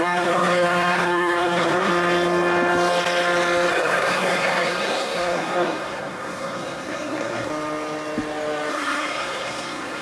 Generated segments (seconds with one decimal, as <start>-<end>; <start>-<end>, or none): 0.0-1.9; 3.7-7.5; 8.7-10.0